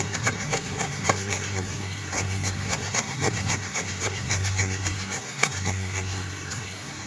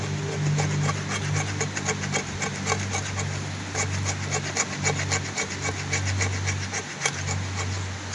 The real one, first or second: second